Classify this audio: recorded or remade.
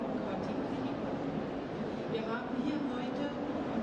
recorded